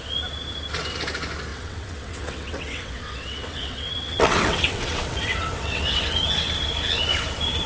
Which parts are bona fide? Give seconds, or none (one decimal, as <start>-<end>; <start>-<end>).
0.0-1.5; 6.1-7.7